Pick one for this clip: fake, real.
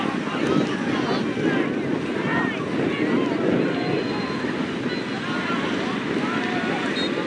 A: real